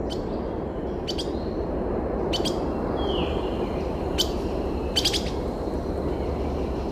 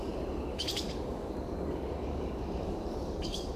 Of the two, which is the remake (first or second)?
second